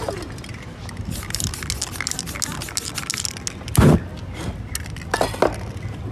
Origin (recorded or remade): recorded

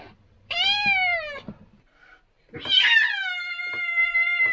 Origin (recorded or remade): recorded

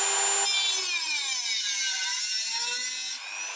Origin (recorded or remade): recorded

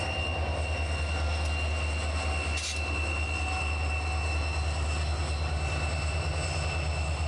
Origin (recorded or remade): recorded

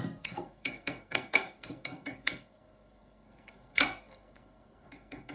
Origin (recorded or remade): remade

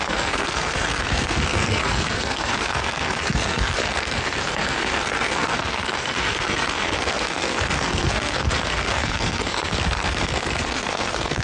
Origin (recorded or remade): remade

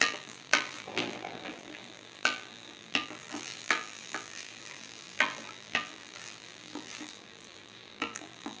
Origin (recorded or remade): remade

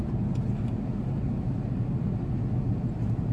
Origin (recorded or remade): recorded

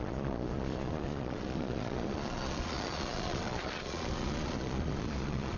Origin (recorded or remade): remade